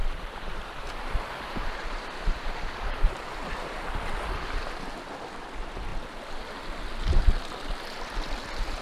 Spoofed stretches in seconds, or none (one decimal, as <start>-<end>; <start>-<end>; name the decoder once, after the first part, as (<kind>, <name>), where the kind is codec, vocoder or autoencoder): 0.0-3.9 (vocoder, BigVGAN v2)